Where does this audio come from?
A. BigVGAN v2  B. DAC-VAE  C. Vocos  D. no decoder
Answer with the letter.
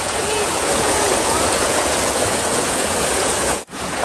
C